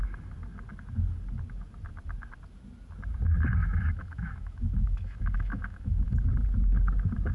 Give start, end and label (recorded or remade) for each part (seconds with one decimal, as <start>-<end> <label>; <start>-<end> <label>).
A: 0.0-3.6 recorded; 3.6-6.3 remade; 6.3-7.3 recorded